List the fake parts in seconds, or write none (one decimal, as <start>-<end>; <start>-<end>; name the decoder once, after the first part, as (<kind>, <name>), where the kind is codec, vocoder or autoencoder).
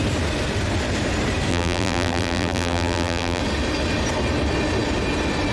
1.5-3.4 (vocoder, BigVGAN v2)